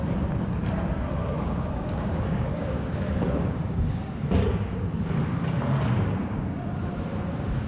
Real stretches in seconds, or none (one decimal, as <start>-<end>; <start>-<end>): 0.0-1.2; 4.9-6.2; 6.8-7.7